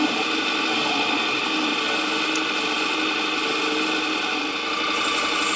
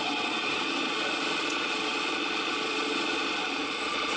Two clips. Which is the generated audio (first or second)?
second